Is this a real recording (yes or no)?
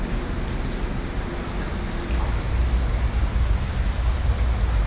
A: yes